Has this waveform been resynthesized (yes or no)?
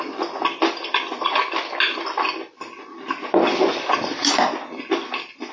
no